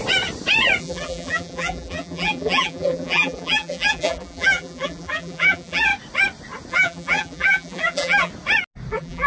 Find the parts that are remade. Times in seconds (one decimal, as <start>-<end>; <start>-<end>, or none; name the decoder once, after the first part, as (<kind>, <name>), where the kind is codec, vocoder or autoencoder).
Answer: 0.8-5.9 (vocoder, BigVGAN v2); 6.7-8.3; 8.9-9.3